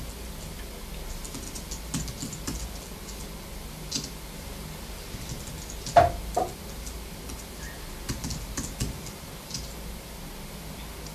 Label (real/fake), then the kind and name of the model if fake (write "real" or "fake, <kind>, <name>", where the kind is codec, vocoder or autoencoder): real